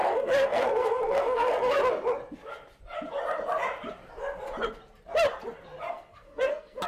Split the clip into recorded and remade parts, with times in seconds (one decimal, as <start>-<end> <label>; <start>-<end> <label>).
0.0-1.8 remade; 1.8-5.9 recorded; 5.9-6.9 remade